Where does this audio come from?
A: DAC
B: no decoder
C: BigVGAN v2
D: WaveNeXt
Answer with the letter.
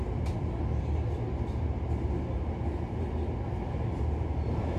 B